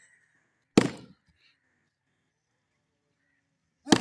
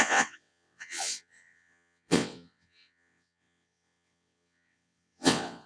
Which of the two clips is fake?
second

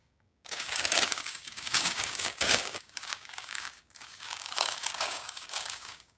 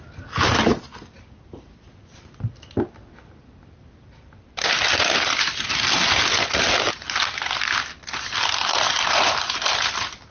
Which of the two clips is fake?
first